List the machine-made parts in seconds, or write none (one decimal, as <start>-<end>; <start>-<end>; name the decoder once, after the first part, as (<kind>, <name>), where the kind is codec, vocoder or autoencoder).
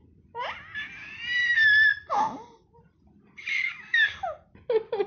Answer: 1.9-5.1 (vocoder, BigVGAN v2)